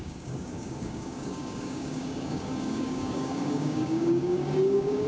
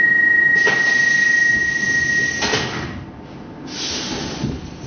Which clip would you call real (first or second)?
second